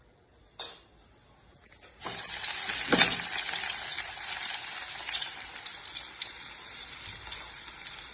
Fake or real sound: real